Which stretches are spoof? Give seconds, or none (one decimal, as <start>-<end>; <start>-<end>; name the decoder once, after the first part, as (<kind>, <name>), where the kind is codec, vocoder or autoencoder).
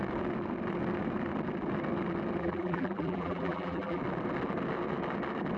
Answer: 2.4-4.0 (vocoder, BigVGAN v2)